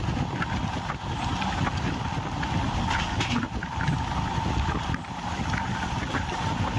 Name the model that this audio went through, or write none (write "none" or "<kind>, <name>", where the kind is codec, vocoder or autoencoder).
none